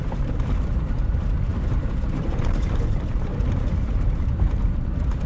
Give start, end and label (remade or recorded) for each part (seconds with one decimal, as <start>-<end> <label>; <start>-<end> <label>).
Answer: 0.0-5.3 remade